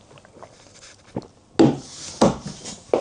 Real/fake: real